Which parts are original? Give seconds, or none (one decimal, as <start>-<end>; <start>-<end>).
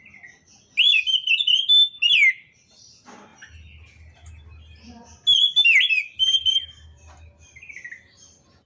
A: 0.0-8.7